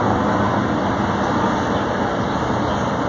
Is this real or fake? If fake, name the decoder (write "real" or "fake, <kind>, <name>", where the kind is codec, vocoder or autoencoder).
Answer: real